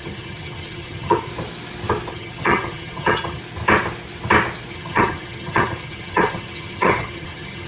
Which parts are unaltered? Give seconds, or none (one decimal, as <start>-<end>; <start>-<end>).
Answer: 1.3-2.1; 3.4-4.7